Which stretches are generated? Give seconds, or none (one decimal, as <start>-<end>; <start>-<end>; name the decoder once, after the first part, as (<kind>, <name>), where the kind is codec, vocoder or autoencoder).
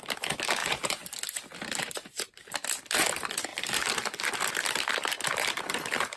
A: none